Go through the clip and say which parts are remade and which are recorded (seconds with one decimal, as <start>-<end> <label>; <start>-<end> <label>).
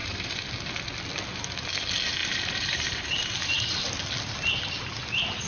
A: 0.0-0.5 remade; 0.5-2.2 recorded; 2.2-4.0 remade; 4.0-5.5 recorded